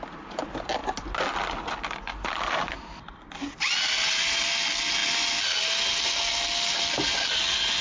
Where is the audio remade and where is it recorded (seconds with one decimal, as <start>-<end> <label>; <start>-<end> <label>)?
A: 0.0-7.8 recorded